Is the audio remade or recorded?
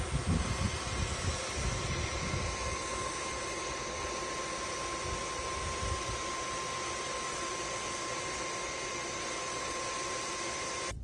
recorded